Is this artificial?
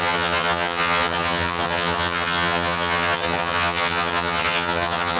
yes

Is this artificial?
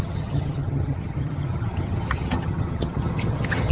yes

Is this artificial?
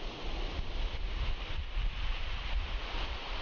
no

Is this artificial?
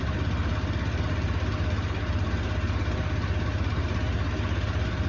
no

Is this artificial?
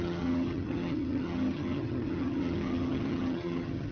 yes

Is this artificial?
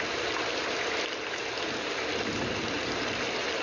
no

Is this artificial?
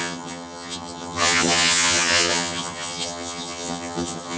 yes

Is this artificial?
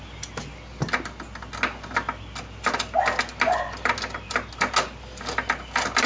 no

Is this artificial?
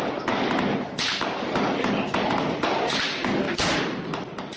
no